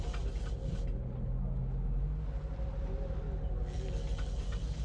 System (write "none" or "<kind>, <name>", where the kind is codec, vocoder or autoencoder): none